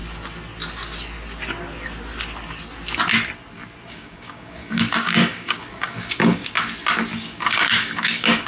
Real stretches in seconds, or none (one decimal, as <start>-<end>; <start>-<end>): 0.0-3.9; 6.4-7.2

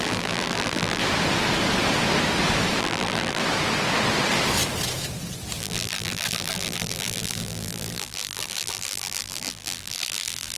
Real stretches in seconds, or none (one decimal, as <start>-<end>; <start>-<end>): 1.0-2.8; 3.4-5.6